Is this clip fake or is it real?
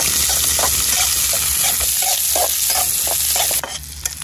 real